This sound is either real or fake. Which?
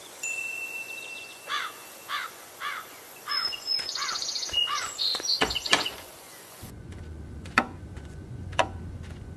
fake